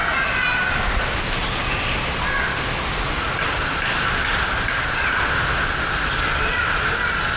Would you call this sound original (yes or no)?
yes